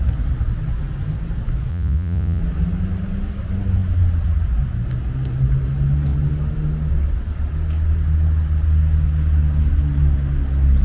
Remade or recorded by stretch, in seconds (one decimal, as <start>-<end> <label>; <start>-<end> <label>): 0.0-1.7 recorded; 1.7-2.4 remade; 2.4-10.8 recorded